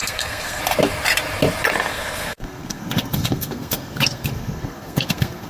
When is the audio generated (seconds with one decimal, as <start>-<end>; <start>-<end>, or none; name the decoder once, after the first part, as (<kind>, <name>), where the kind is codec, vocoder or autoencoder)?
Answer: 0.0-0.6 (codec, SNAC); 1.9-5.5